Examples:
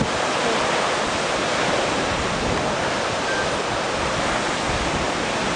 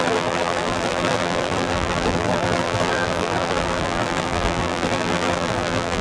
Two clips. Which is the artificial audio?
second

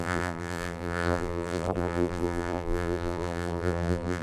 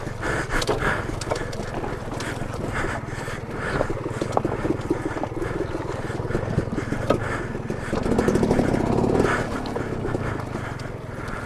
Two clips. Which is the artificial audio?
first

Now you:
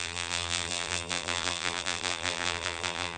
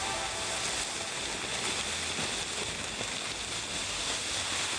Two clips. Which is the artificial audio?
first